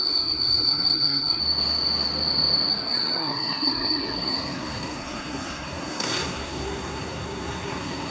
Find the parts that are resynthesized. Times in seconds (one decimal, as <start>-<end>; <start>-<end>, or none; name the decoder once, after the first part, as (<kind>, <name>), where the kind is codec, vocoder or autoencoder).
0.0-1.4 (codec, SNAC); 2.7-8.1